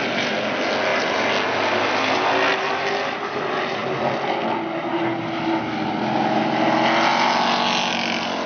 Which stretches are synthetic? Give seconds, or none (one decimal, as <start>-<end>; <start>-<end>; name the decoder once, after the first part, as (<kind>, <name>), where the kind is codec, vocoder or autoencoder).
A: none